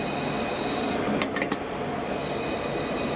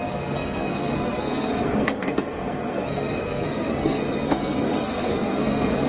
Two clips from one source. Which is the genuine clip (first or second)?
first